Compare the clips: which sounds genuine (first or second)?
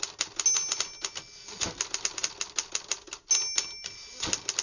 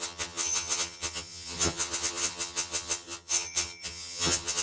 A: first